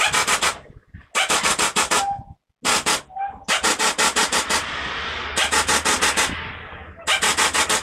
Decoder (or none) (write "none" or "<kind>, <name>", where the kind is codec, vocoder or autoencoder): none